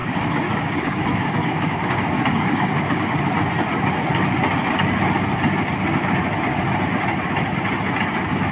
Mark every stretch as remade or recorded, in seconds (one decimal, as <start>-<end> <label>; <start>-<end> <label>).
0.0-3.2 remade; 3.2-8.5 recorded

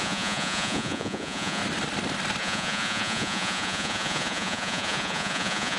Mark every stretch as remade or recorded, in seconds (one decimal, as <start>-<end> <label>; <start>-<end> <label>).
0.0-1.6 remade; 1.6-2.4 recorded; 2.4-5.8 remade